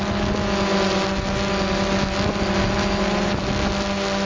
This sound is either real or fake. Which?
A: real